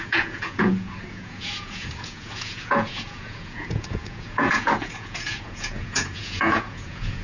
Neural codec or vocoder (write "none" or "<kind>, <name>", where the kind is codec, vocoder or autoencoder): vocoder, Vocos